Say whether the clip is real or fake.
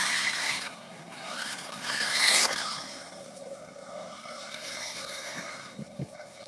fake